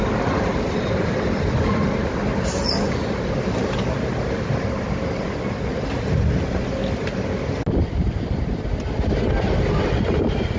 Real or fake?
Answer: real